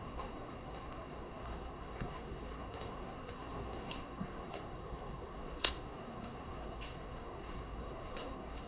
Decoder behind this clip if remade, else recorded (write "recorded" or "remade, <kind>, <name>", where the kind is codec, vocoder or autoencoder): remade, codec, SNAC